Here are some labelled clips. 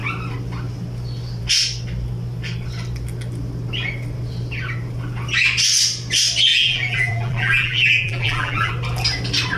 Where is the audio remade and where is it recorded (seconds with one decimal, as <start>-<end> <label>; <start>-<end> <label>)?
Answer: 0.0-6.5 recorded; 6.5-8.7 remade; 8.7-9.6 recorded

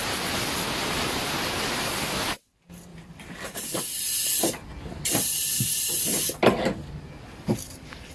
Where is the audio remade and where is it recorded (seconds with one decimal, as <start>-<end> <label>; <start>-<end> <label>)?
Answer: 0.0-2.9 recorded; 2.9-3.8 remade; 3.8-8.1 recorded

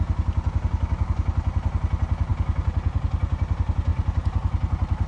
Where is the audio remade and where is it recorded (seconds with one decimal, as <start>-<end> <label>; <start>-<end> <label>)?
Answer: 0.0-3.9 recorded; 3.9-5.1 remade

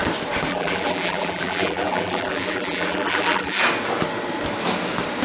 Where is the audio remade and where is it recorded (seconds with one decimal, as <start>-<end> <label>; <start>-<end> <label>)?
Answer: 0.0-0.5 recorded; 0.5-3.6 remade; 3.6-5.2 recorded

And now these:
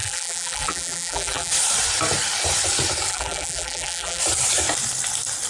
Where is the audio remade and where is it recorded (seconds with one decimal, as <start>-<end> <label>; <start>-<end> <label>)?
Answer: 0.0-1.5 remade; 1.5-3.1 recorded; 3.1-4.2 remade; 4.2-5.5 recorded

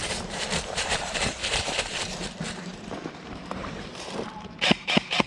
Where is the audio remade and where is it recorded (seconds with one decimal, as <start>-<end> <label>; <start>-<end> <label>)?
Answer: 0.0-5.3 remade